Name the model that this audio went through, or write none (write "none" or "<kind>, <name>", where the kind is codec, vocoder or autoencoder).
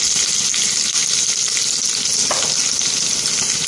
none